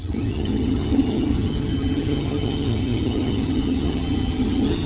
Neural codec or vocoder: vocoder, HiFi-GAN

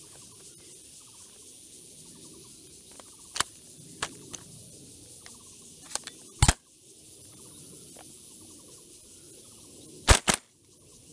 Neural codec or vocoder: none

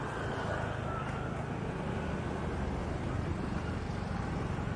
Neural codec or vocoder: none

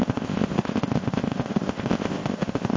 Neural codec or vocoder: codec, ZipCodec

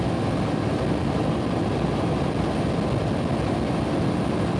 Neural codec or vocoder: none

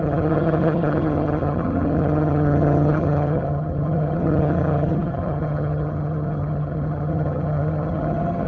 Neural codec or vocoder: vocoder, HiFi-GAN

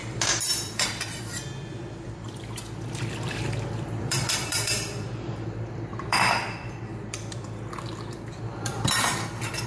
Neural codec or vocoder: vocoder, BigVGAN v2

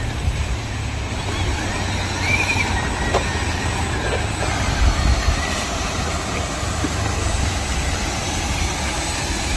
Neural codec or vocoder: none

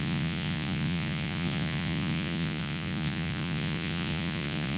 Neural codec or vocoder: vocoder, Vocos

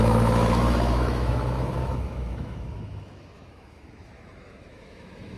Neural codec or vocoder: autoencoder, DAC-VAE